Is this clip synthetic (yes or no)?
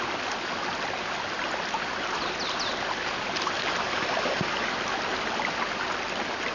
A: no